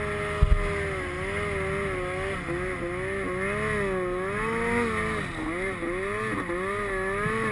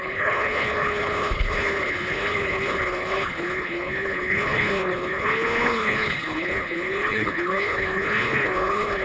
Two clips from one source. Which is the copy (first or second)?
second